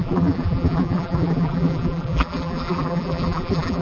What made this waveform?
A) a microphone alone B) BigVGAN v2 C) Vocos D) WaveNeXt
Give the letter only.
B